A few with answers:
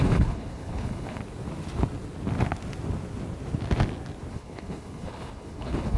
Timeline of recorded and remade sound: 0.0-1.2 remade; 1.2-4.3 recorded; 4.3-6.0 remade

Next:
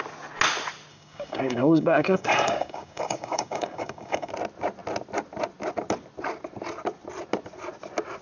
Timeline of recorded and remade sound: 0.0-0.9 recorded; 0.9-4.3 remade; 4.3-8.2 recorded